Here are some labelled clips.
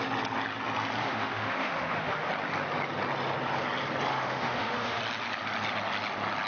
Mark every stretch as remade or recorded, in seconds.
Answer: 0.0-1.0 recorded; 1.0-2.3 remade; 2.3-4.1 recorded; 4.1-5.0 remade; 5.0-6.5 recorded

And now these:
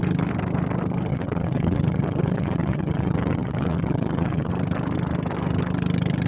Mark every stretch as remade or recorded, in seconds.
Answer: 0.0-1.1 recorded; 1.1-4.5 remade; 4.5-6.3 recorded

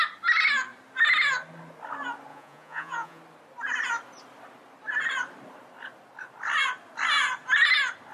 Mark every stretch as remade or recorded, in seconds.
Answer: 0.0-2.3 recorded; 2.3-3.2 remade; 3.2-8.1 recorded

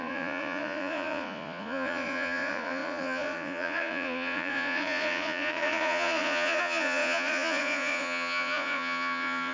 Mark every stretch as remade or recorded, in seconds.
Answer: 0.0-9.5 remade

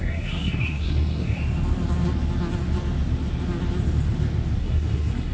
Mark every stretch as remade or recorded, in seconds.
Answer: 0.0-1.4 remade; 1.4-4.6 recorded; 4.6-5.3 remade

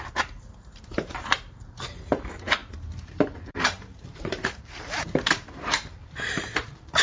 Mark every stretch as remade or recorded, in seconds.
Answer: 0.0-7.0 remade

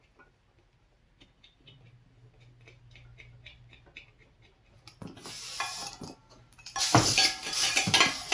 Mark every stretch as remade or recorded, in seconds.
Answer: 0.0-8.3 recorded